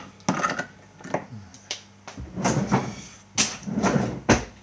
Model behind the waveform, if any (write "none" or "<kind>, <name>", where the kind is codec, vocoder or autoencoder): none